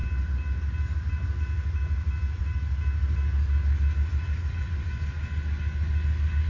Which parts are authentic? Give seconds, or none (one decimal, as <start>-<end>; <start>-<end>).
0.0-6.5